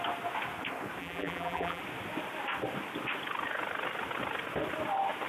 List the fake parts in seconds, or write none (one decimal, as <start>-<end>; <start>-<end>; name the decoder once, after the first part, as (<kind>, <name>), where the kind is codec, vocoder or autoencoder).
1.0-1.8 (vocoder, BigVGAN v2)

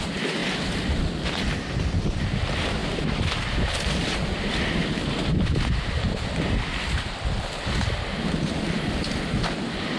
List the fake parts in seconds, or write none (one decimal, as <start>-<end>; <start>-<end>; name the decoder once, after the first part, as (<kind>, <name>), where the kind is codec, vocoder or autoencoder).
none

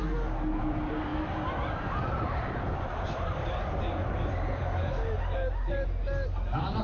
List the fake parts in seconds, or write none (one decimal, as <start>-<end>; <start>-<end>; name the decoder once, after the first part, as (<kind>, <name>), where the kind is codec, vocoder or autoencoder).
0.6-4.6 (vocoder, BigVGAN v2)

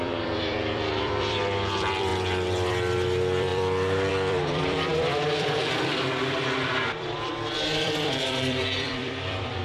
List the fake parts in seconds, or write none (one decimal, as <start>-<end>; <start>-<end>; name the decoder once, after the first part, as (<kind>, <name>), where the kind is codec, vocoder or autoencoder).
0.0-9.6 (vocoder, BigVGAN v2)